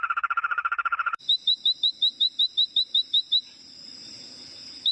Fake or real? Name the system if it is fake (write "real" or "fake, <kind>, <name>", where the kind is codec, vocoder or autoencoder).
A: fake, vocoder, BigVGAN v2